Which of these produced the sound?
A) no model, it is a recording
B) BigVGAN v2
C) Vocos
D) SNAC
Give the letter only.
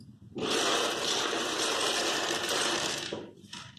B